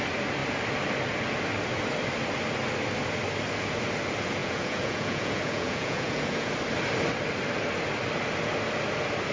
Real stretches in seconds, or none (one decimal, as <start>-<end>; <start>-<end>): 0.0-4.4; 6.5-9.3